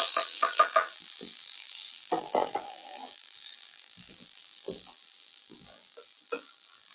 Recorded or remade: remade